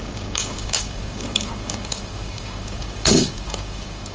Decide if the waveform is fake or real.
fake